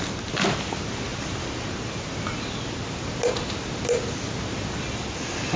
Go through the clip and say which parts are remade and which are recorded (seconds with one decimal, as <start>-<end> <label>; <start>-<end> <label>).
0.0-5.6 recorded

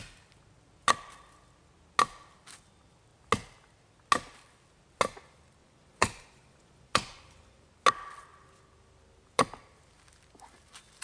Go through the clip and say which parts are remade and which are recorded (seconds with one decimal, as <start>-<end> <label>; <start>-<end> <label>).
0.0-5.6 recorded; 5.6-7.7 remade; 7.7-11.0 recorded

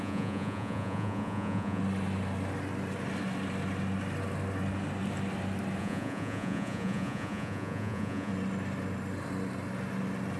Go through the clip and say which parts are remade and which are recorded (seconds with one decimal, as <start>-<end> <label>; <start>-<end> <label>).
0.0-1.8 remade; 1.8-5.8 recorded; 5.8-8.3 remade; 8.3-10.4 recorded

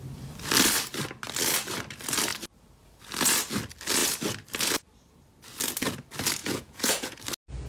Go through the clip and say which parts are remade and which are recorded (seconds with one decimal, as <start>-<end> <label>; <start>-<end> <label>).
0.0-6.4 recorded; 6.4-7.2 remade; 7.2-7.7 recorded